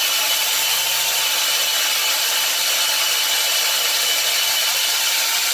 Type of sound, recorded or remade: recorded